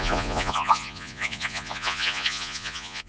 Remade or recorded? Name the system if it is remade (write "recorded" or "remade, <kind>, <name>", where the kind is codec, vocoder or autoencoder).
remade, vocoder, Vocos